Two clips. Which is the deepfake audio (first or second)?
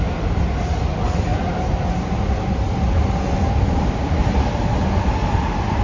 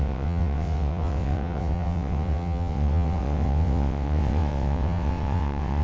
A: second